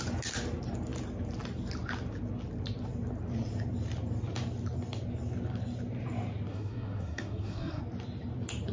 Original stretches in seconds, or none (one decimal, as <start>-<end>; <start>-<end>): 0.0-6.5; 7.8-8.7